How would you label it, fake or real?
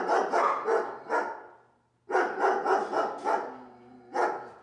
real